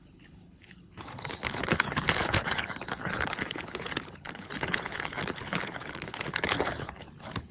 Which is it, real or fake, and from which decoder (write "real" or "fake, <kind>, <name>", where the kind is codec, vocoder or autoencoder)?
fake, codec, HILCodec